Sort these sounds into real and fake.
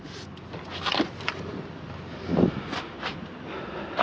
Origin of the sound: real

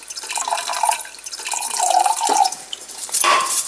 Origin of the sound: fake